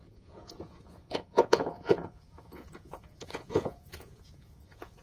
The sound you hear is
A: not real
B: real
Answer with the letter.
A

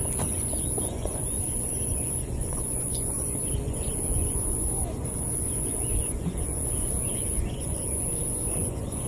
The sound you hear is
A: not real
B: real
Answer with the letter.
A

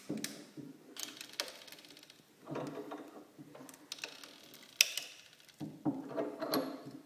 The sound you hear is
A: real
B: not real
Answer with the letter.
A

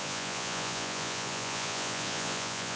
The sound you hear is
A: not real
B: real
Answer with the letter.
A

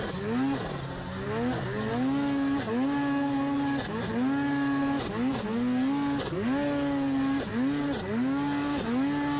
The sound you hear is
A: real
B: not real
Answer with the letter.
A